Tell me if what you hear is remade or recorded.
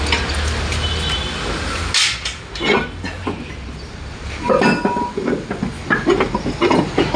recorded